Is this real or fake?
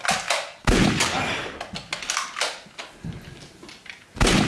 real